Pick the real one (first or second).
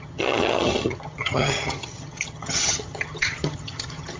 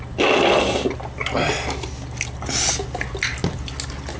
second